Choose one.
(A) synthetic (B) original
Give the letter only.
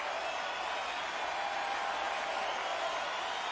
B